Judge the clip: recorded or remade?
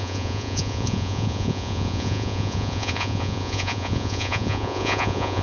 remade